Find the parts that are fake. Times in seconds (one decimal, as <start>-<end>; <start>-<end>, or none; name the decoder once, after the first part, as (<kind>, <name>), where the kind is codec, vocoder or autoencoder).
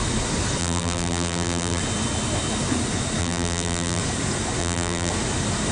0.6-1.8 (vocoder, BigVGAN v2); 3.2-4.0; 4.6-5.1